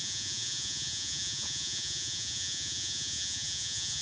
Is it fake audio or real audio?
fake